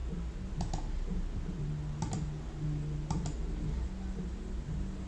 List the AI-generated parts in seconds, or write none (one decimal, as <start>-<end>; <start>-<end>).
none